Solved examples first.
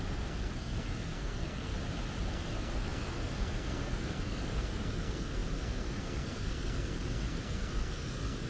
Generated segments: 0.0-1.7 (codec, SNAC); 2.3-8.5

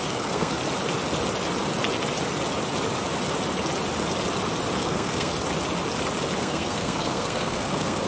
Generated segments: 0.0-0.6 (codec, SNAC); 4.8-5.3; 6.4-8.1

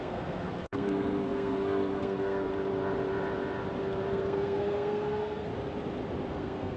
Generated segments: 0.0-2.5 (codec, SNAC); 4.1-5.5; 6.3-6.8

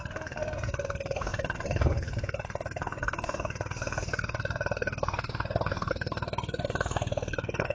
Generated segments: 0.0-7.7 (codec, SNAC)

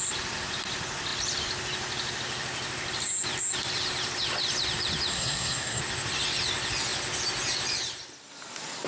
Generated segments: 5.1-5.8 (codec, SNAC)

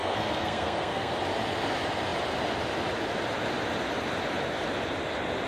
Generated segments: 0.0-1.1 (codec, SNAC)

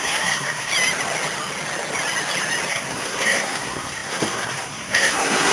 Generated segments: 0.0-0.7 (codec, SNAC); 2.7-5.5